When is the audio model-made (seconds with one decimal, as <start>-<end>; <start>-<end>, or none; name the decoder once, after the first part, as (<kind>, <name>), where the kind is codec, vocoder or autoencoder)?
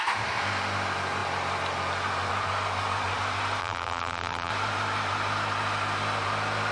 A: 3.6-4.5 (vocoder, BigVGAN v2)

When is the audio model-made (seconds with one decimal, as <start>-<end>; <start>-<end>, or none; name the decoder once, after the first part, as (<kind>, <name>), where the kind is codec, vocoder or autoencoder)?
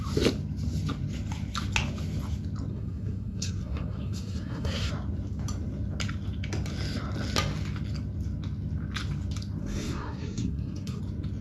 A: 2.7-4.9 (codec, SNAC); 9.6-11.0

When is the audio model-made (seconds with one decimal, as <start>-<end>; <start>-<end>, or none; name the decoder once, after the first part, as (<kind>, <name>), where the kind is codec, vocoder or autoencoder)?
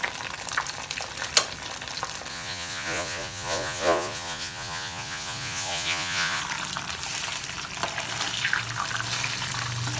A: 2.3-6.4 (vocoder, Vocos)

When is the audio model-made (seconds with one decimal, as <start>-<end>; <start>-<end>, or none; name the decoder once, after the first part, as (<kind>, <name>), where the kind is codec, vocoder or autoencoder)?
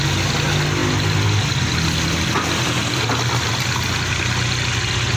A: none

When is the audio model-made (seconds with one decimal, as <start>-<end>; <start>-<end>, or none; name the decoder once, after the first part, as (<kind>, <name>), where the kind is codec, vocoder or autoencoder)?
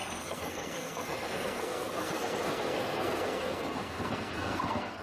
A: 0.0-5.0 (codec, SNAC)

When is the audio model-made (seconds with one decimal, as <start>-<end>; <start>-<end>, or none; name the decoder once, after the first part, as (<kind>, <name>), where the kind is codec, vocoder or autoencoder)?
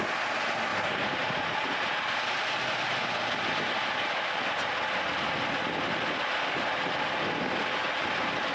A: 0.7-1.4 (vocoder, BigVGAN v2)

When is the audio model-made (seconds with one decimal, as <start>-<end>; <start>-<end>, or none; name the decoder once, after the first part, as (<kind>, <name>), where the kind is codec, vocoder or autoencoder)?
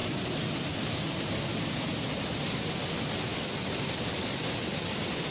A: 0.0-2.2 (vocoder, BigVGAN v2)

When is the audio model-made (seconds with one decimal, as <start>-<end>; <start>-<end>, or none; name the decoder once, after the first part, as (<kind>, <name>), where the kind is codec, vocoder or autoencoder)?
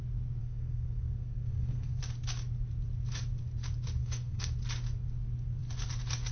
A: 0.4-2.0 (codec, SNAC); 4.0-4.5